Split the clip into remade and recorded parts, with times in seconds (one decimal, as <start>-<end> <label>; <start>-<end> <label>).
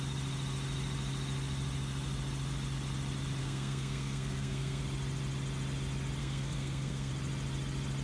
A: 0.0-3.4 recorded; 3.4-4.8 remade; 4.8-6.2 recorded; 6.2-7.1 remade; 7.1-8.0 recorded